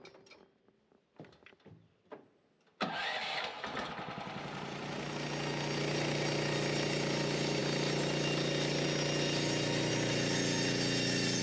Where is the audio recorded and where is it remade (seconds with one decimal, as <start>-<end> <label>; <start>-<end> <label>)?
0.0-11.4 recorded